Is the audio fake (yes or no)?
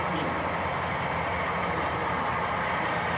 no